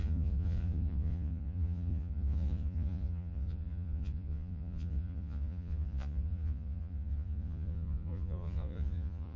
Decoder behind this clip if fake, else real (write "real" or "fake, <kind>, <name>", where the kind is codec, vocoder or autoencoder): fake, vocoder, Vocos